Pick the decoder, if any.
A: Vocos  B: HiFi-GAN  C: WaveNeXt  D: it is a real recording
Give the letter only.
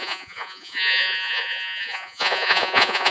A